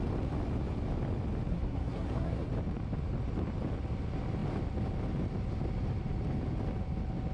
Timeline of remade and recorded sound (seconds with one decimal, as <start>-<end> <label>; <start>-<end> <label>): 0.0-1.5 recorded; 1.5-2.5 remade; 2.5-7.3 recorded